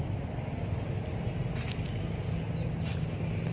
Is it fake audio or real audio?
real